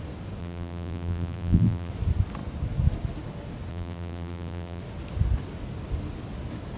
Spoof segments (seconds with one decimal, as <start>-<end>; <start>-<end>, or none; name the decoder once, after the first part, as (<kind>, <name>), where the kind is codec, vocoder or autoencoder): 0.4-1.9 (vocoder, BigVGAN v2); 3.7-4.8

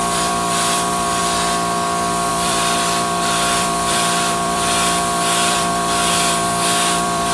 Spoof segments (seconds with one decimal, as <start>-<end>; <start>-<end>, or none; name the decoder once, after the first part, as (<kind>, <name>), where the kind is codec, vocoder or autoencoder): 0.0-1.2 (vocoder, BigVGAN v2); 2.3-7.3

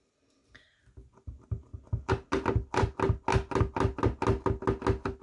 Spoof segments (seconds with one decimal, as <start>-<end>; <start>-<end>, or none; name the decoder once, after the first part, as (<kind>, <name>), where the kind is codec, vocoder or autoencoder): none